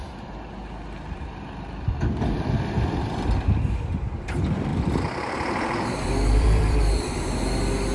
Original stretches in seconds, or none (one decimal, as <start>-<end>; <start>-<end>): 0.0-4.7; 7.1-7.9